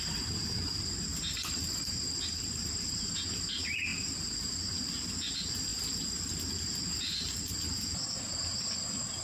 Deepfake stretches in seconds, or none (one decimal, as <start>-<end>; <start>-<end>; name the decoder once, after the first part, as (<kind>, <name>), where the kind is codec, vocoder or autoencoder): 1.1-3.0 (vocoder, BigVGAN v2); 3.9-4.8; 5.7-7.4